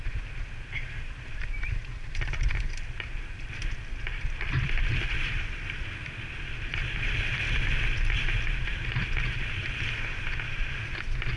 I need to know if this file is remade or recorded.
remade